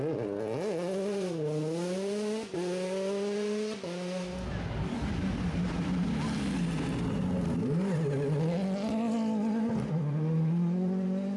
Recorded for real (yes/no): yes